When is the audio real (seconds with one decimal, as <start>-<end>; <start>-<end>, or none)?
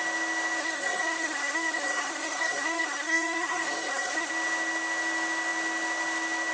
0.0-0.6; 4.3-6.5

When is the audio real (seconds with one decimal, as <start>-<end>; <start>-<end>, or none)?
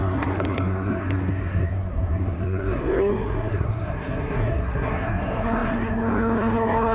none